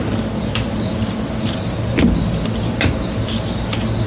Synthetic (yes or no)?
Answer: no